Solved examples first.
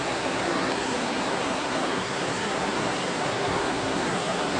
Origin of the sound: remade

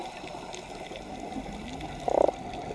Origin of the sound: recorded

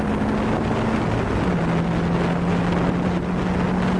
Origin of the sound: recorded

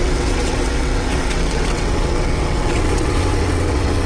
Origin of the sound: remade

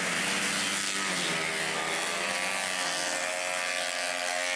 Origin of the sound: recorded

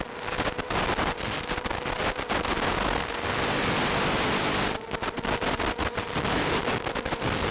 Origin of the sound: recorded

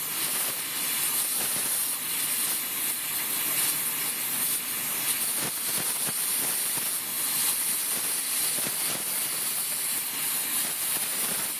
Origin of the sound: recorded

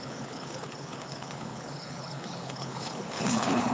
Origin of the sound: remade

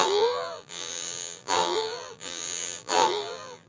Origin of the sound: remade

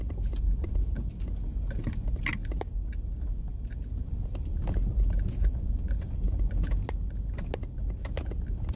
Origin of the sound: recorded